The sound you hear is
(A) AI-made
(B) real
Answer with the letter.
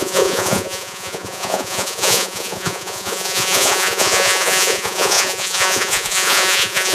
A